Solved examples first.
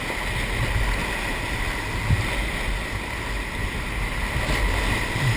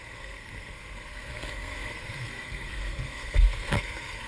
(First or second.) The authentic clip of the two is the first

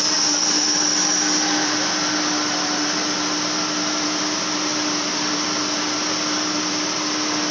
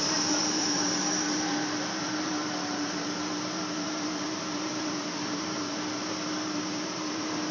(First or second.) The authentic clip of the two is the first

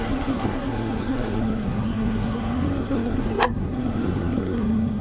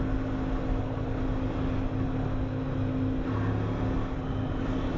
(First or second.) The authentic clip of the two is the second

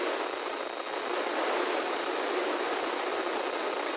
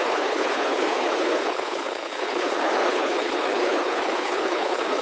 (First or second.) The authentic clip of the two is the first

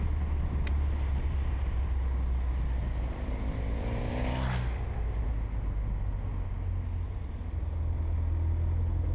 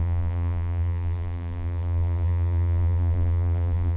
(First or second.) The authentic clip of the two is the first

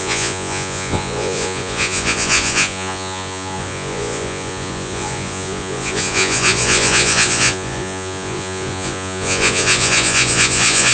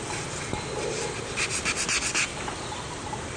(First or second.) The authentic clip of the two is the second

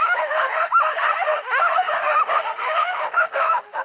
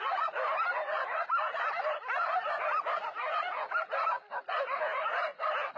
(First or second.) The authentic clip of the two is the second